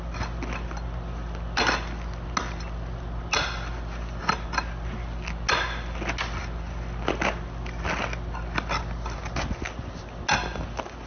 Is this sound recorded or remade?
recorded